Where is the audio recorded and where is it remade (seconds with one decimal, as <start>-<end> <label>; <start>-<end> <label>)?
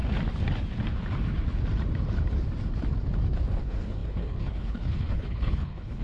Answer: 0.0-3.6 recorded; 3.6-6.0 remade